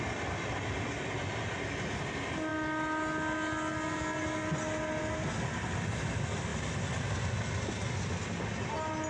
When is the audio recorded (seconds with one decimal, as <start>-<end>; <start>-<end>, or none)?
0.0-9.1